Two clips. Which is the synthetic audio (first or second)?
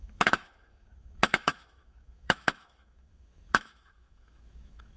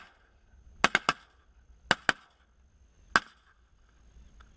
first